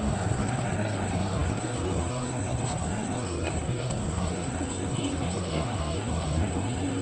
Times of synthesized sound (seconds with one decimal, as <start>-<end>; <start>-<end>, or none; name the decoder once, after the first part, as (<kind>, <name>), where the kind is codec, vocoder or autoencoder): 0.0-7.0 (codec, SNAC)